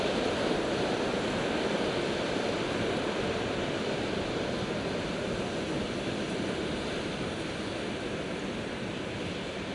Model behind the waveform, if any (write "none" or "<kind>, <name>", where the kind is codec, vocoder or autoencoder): none